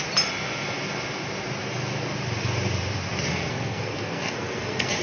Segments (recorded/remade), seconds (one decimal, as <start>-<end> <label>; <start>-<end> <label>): 0.0-3.3 recorded; 3.3-5.0 remade